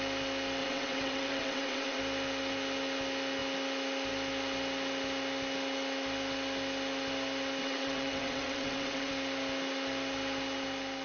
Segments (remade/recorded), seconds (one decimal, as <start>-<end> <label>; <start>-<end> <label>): 0.0-0.6 recorded; 0.6-2.0 remade; 2.0-7.6 recorded; 7.6-9.1 remade; 9.1-11.0 recorded